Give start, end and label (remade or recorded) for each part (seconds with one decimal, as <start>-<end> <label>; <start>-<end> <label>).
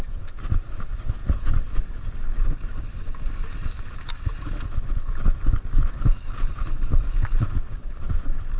0.0-8.6 recorded